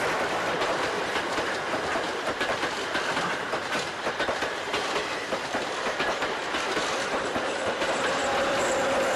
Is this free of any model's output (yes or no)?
no